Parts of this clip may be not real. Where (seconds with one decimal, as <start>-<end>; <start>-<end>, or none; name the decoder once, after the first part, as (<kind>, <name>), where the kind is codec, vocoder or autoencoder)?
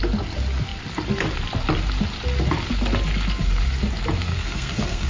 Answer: 4.3-5.1 (codec, SNAC)